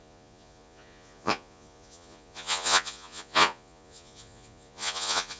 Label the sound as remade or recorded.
remade